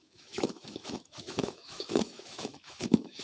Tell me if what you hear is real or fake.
fake